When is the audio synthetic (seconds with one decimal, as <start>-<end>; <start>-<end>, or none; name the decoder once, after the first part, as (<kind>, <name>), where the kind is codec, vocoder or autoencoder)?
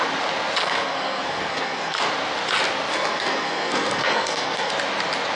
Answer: 0.6-2.0 (codec, SNAC); 2.9-4.7